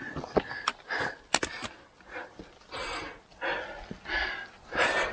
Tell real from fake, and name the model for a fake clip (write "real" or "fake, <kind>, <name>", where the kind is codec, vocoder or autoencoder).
real